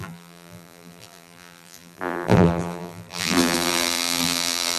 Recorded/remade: remade